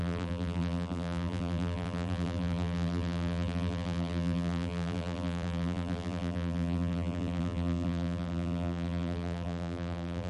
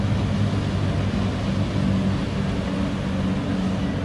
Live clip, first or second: second